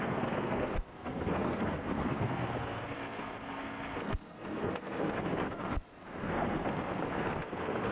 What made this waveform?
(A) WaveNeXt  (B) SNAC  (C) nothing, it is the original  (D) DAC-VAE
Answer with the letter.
B